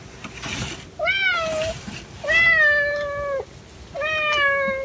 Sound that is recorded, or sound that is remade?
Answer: recorded